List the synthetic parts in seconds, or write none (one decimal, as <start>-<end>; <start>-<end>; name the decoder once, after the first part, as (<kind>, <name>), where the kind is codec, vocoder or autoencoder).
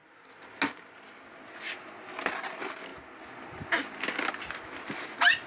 none